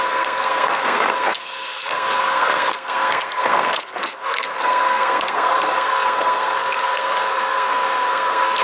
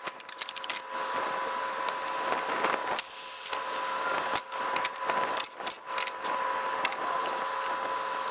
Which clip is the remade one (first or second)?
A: first